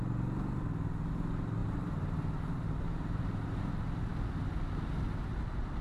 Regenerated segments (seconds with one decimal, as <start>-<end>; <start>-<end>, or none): 1.6-3.6